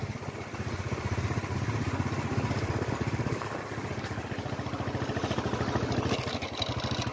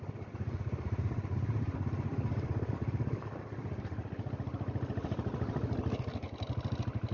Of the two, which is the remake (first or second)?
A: second